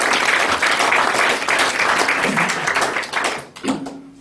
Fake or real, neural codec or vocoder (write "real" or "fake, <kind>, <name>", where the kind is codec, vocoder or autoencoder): real